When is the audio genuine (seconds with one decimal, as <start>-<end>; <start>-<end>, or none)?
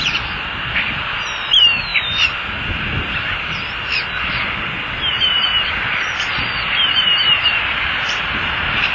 0.0-8.9